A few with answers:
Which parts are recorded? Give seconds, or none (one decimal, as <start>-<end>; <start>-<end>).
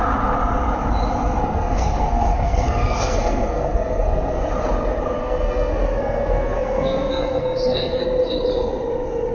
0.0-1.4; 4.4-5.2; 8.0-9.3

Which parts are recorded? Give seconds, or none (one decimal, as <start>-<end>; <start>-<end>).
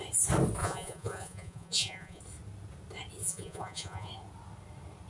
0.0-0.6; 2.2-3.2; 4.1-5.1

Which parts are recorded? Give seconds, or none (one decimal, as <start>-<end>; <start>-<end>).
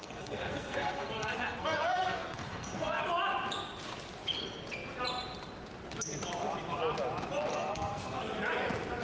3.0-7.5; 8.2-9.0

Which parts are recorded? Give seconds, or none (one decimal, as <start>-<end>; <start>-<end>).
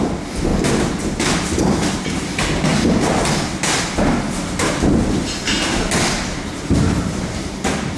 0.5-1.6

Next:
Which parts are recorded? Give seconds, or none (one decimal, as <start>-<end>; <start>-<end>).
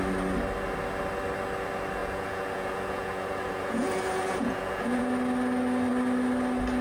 0.0-2.0; 5.0-6.8